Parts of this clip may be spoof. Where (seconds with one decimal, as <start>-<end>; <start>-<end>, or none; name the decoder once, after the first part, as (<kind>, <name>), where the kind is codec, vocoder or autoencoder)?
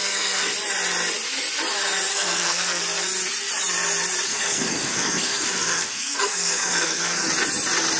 0.0-0.5 (codec, SNAC); 2.1-2.8; 4.3-7.3